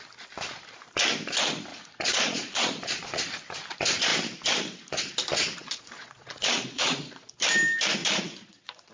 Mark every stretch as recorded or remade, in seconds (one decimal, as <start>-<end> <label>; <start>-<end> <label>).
0.0-1.7 recorded; 1.7-3.2 remade; 3.2-5.6 recorded; 5.6-7.3 remade; 7.3-8.0 recorded; 8.0-8.9 remade